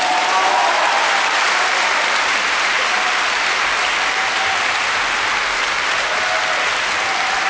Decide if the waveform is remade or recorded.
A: recorded